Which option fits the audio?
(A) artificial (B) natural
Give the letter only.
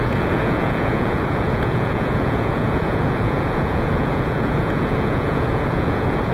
A